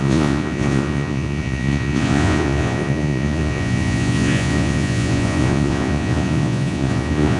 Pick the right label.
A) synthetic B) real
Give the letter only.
A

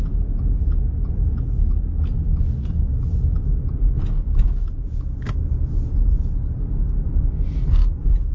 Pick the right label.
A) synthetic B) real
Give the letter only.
B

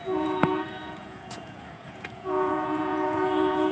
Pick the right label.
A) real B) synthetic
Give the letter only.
B